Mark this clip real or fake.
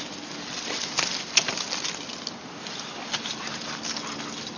real